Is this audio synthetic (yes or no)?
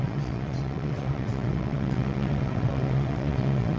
yes